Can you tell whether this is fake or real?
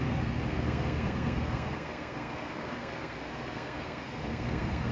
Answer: fake